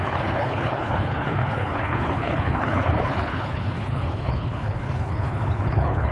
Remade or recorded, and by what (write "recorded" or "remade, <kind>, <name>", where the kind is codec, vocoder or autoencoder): remade, codec, HILCodec